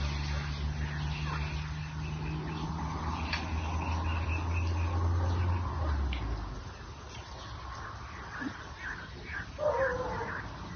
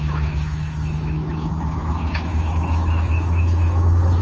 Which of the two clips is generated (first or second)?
second